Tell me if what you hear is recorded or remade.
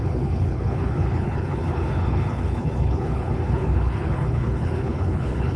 remade